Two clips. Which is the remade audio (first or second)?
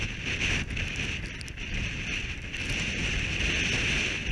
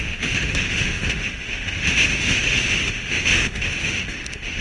second